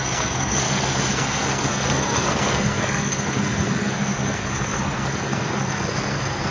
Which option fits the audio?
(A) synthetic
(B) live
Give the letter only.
A